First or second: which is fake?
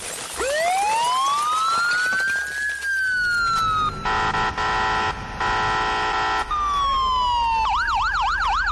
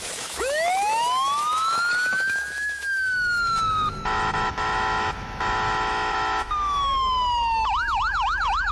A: second